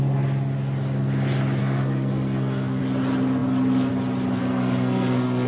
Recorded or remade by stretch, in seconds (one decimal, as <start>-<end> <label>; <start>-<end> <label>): 0.0-1.6 recorded; 1.6-2.8 remade; 2.8-4.4 recorded; 4.4-5.5 remade